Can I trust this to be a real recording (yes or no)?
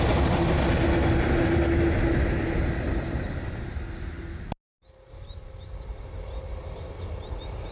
yes